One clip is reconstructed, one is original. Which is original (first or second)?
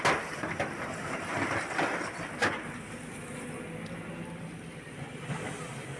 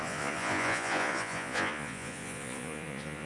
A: first